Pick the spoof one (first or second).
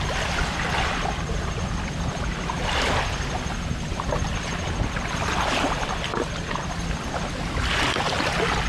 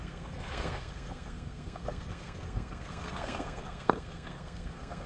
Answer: second